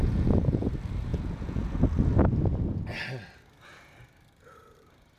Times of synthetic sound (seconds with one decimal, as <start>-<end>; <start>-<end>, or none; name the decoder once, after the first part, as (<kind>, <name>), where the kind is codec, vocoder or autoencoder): 0.0-0.7 (vocoder, Vocos); 1.1-1.8